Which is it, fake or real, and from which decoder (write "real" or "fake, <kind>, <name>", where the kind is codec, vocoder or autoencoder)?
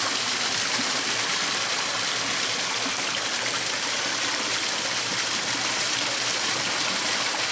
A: real